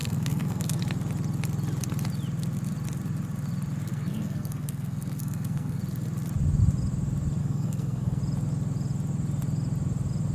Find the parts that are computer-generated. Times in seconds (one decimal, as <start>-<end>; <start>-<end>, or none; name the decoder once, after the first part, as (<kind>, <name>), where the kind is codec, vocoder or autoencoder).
0.0-0.8 (codec, SNAC); 3.9-5.8; 7.4-8.2